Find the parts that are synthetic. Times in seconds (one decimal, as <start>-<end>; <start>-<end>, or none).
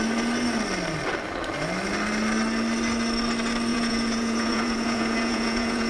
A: 3.7-5.9